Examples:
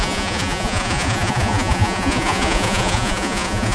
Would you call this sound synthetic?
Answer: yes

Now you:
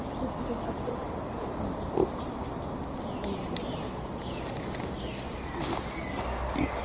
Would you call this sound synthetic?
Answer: no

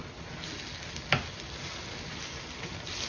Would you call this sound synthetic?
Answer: no